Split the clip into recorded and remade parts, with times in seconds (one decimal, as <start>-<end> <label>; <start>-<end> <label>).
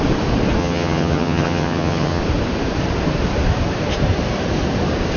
0.0-0.6 recorded; 0.6-2.2 remade; 2.2-5.2 recorded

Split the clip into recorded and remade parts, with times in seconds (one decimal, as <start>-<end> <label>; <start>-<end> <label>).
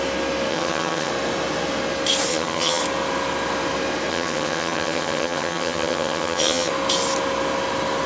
0.0-0.5 recorded; 0.5-1.1 remade; 1.1-2.3 recorded; 2.3-2.8 remade; 2.8-4.1 recorded; 4.1-6.7 remade; 6.7-8.1 recorded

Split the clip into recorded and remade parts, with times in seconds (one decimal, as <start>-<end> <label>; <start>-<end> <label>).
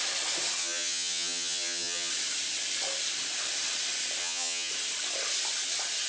0.0-0.6 recorded; 0.6-2.1 remade; 2.1-4.2 recorded; 4.2-4.7 remade; 4.7-6.1 recorded